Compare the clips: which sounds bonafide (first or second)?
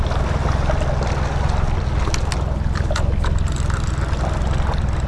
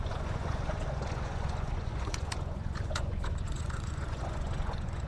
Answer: first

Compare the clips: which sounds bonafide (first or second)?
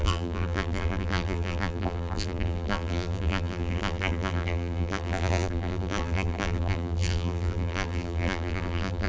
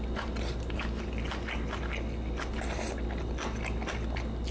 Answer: second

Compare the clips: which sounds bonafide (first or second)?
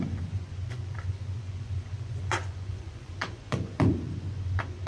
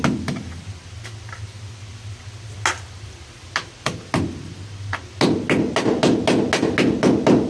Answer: second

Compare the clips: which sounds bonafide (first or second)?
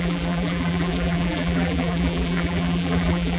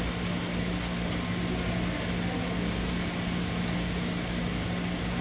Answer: second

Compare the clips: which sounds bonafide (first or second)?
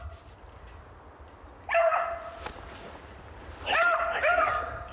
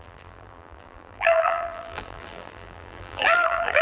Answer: first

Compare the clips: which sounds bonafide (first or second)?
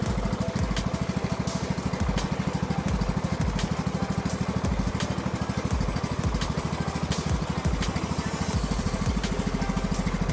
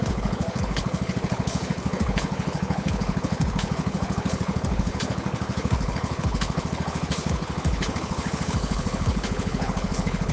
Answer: first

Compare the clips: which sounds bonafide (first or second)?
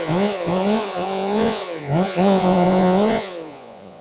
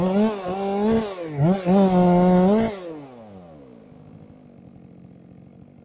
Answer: second